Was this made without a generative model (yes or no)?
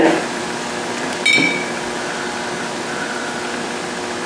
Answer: yes